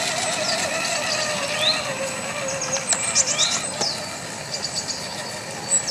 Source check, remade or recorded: recorded